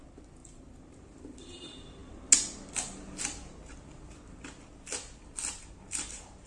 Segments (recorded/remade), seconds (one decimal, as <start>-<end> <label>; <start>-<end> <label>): 0.0-0.4 recorded; 0.4-0.9 remade; 0.9-6.5 recorded